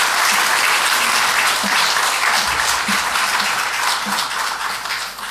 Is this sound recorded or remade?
recorded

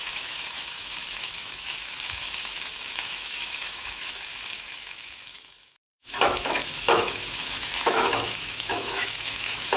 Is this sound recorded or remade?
remade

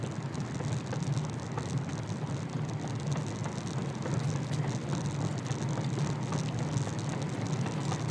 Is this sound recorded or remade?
recorded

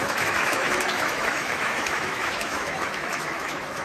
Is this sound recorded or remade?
remade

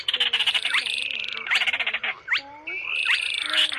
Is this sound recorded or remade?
recorded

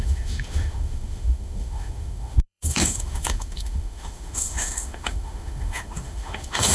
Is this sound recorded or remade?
remade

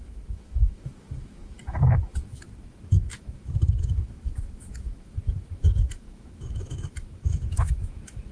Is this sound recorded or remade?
remade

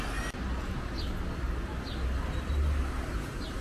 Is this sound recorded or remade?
recorded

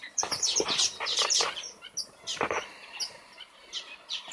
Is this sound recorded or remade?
recorded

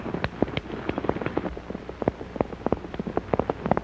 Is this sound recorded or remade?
recorded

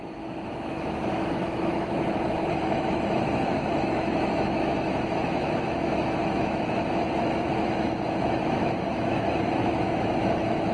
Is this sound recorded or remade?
remade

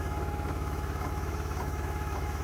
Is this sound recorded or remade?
remade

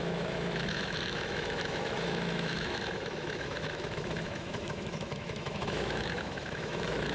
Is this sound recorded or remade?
remade